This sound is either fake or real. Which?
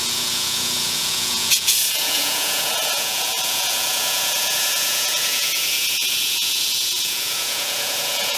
fake